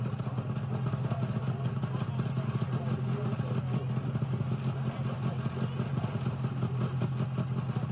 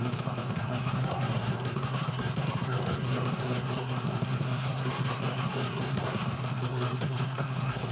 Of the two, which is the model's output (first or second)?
second